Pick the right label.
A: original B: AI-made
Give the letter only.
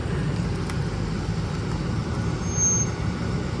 A